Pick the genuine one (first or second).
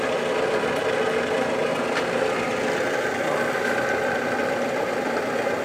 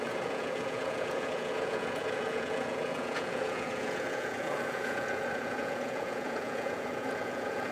first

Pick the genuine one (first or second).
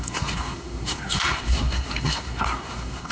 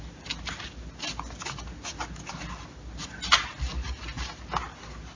second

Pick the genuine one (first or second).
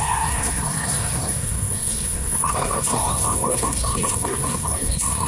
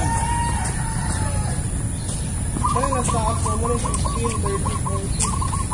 second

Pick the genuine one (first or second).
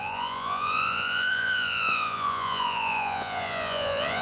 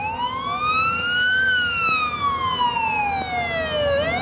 second